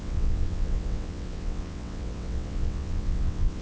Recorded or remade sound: remade